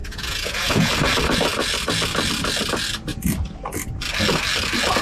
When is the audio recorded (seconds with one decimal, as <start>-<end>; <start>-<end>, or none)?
0.9-5.0

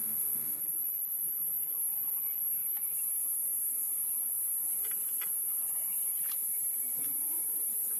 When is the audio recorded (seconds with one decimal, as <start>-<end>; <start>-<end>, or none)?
0.6-8.0

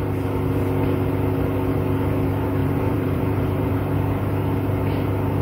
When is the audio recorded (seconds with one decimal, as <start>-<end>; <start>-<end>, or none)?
0.0-2.6; 3.7-5.4

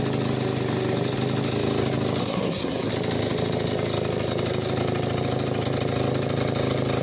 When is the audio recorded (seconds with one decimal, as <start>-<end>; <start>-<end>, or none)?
0.0-2.2; 2.9-7.0

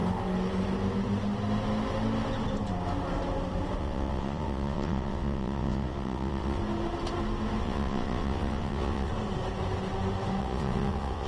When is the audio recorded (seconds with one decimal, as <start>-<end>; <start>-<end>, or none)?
0.0-3.8; 6.6-7.6; 9.1-10.4

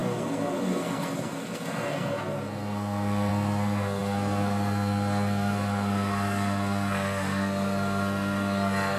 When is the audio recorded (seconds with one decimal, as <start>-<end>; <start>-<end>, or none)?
none

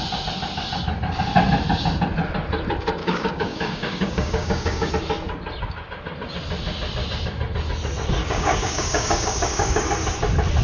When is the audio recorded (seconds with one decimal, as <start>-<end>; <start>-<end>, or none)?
0.0-3.0; 4.9-8.2; 9.9-10.6

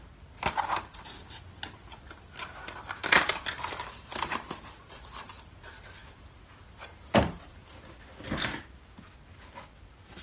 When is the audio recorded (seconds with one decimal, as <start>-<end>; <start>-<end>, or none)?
0.0-10.2